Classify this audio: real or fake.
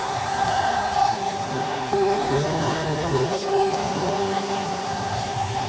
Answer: fake